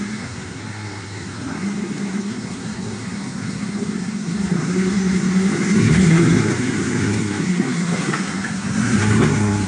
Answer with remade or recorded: remade